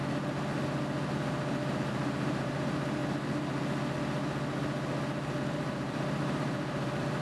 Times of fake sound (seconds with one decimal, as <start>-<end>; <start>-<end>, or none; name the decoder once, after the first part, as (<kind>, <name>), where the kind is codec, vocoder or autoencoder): 1.1-3.0 (vocoder, BigVGAN v2); 5.4-7.2